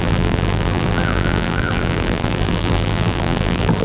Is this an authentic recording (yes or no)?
no